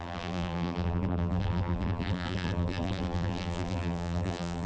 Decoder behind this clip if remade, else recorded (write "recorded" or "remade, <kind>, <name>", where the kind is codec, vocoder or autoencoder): remade, vocoder, BigVGAN v2